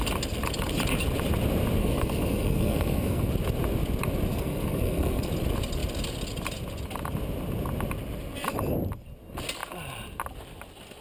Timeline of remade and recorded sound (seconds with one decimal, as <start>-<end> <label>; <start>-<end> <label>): 0.0-1.8 recorded; 1.8-3.3 remade; 3.3-4.3 recorded; 4.3-5.3 remade; 5.3-11.0 recorded